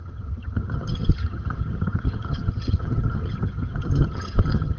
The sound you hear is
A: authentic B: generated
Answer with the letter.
B